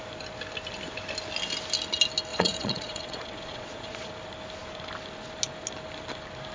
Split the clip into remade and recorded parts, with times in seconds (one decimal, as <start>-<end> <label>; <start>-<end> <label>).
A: 0.0-2.3 recorded; 2.3-4.1 remade; 4.1-6.5 recorded